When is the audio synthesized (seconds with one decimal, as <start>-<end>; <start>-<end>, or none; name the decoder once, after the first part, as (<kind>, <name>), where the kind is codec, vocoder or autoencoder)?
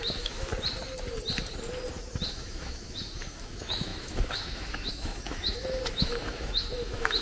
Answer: 0.0-0.5 (autoencoder, DAC-VAE); 2.3-7.2